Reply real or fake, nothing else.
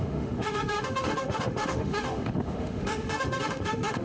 fake